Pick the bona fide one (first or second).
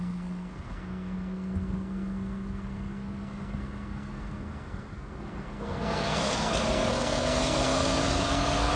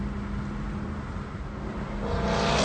second